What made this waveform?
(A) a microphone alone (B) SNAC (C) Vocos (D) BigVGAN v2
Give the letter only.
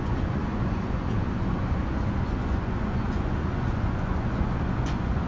C